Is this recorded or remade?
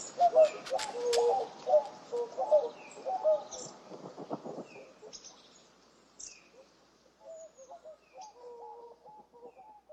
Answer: recorded